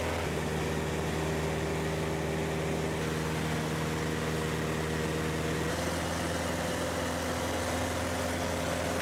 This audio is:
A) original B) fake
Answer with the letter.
A